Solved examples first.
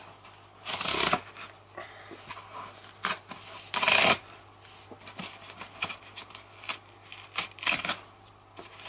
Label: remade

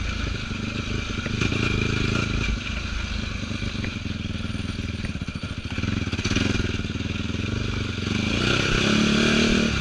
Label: recorded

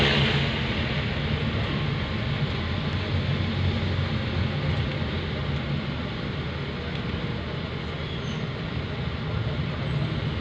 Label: recorded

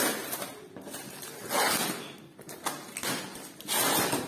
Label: recorded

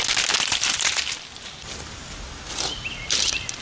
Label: recorded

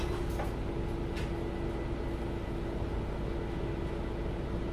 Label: recorded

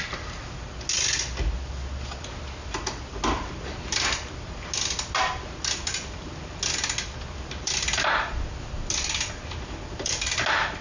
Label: recorded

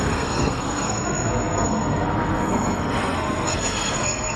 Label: remade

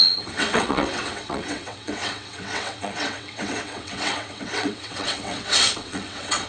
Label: remade